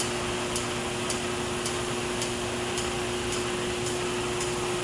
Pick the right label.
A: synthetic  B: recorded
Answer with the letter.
B